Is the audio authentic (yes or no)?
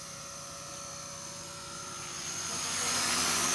no